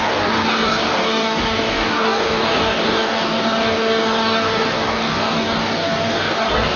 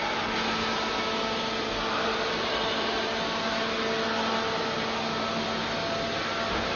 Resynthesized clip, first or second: first